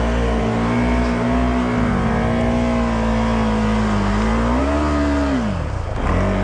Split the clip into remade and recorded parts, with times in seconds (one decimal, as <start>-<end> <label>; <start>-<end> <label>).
0.0-6.4 recorded